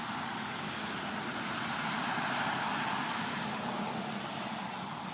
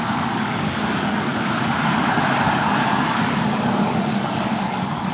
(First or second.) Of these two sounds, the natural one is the first